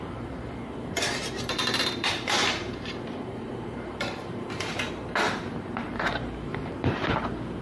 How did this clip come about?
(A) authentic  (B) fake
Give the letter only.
B